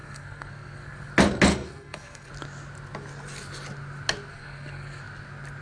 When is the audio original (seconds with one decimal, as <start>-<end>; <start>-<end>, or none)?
1.1-1.5; 2.3-4.3; 5.0-5.6